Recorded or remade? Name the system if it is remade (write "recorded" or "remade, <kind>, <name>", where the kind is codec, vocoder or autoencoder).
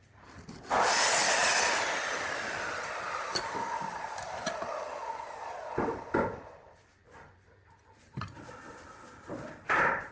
recorded